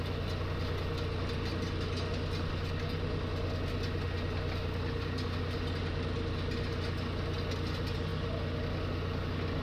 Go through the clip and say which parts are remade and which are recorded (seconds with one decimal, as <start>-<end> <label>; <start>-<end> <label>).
0.0-9.6 recorded

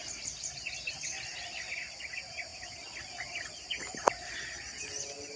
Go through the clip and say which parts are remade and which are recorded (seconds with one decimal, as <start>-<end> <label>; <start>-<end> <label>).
0.0-5.4 remade

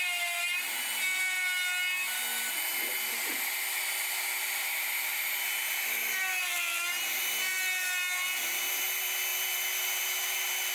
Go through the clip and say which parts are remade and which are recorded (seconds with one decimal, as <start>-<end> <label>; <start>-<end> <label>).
0.0-10.7 recorded

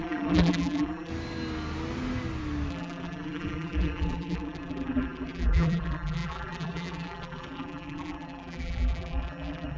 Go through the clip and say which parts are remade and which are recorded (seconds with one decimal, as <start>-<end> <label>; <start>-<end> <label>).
0.0-1.1 remade; 1.1-2.7 recorded; 2.7-9.8 remade

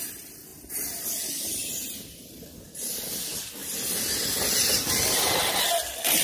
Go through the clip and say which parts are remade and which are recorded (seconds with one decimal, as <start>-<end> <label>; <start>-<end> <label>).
0.0-6.2 recorded

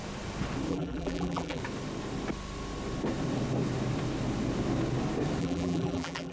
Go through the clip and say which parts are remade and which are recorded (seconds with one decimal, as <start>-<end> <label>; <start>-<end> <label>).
0.0-0.7 recorded; 0.7-1.6 remade; 1.6-5.4 recorded; 5.4-6.3 remade

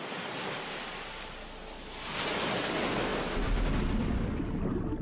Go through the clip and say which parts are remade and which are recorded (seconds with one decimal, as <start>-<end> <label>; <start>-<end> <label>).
0.0-5.0 recorded